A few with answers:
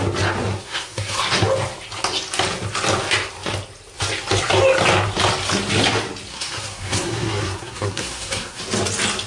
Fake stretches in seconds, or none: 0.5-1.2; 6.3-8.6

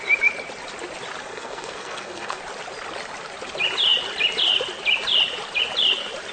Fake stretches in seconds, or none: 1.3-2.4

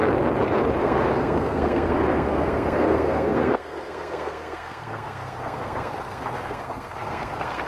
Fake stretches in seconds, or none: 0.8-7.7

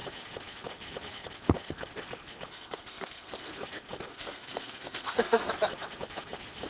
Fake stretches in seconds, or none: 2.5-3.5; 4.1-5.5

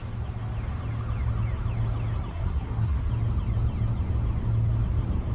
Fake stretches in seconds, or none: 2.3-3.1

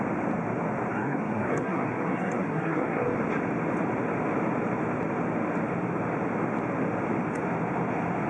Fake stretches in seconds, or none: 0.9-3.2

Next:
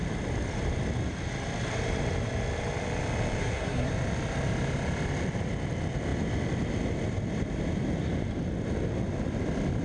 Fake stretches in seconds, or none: 3.4-3.9